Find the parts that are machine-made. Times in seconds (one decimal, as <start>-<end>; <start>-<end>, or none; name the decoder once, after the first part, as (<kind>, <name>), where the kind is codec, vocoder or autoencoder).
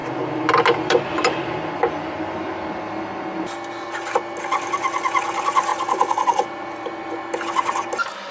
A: none